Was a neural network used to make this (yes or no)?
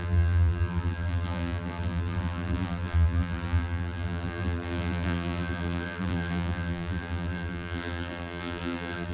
yes